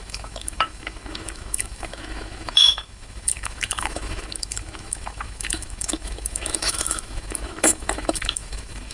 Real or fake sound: fake